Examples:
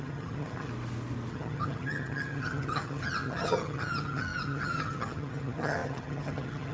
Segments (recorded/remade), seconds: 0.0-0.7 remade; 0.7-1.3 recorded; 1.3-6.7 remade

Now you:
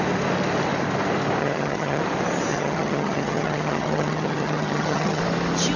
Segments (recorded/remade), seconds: 0.0-1.4 recorded; 1.4-2.0 remade; 2.0-2.5 recorded; 2.5-5.2 remade; 5.2-5.8 recorded

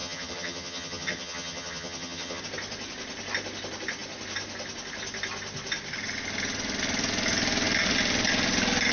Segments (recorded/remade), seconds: 0.0-2.4 remade; 2.4-8.9 recorded

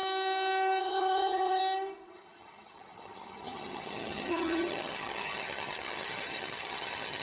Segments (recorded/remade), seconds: 0.0-0.8 recorded; 0.8-1.6 remade; 1.6-2.1 recorded; 2.1-7.2 remade

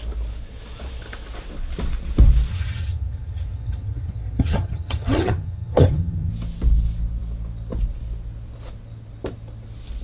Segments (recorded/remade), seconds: 0.0-2.5 recorded; 2.5-6.3 remade; 6.3-10.0 recorded

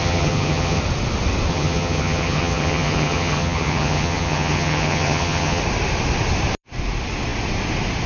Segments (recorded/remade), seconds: 0.0-0.8 remade; 0.8-1.5 recorded; 1.5-5.6 remade; 5.6-8.1 recorded

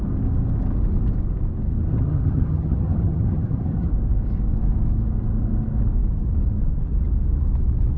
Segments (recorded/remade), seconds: 0.0-1.9 recorded; 1.9-3.9 remade; 3.9-8.0 recorded

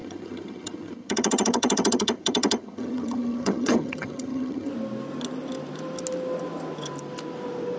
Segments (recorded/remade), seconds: 0.0-4.7 remade; 4.7-7.8 recorded